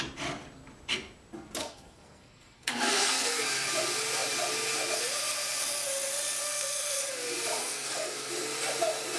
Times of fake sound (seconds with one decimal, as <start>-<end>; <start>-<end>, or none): 1.6-3.7; 6.4-7.0; 7.6-8.3